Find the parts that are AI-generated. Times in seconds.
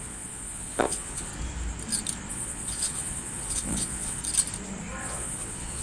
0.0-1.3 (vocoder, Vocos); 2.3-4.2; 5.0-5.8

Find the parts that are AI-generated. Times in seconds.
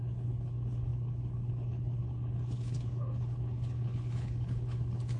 0.0-5.2 (codec, HILCodec)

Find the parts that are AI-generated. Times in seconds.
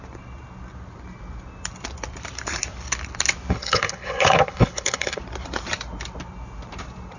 3.5-5.2 (codec, HILCodec)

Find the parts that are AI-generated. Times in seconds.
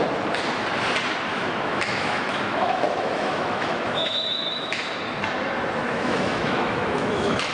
1.3-4.8 (autoencoder, DAC-VAE); 5.8-7.5